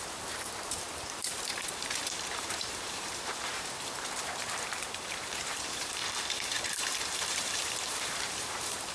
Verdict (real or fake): fake